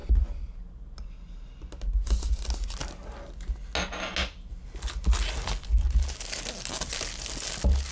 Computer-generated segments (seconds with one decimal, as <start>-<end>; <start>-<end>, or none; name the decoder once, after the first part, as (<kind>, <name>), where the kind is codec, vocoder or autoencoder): 0.0-0.6 (vocoder, BigVGAN v2)